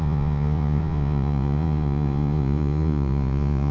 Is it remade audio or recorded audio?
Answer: remade